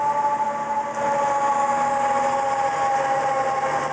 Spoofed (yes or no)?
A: no